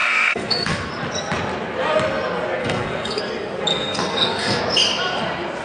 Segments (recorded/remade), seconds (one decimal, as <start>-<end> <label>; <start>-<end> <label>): 0.0-0.9 remade; 0.9-2.6 recorded; 2.6-3.2 remade; 3.2-3.7 recorded; 3.7-4.6 remade; 4.6-5.6 recorded